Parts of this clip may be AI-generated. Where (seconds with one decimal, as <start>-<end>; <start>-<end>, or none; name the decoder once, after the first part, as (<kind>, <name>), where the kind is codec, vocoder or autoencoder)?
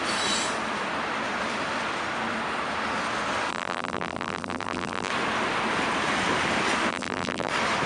3.5-5.1 (vocoder, BigVGAN v2); 6.9-7.5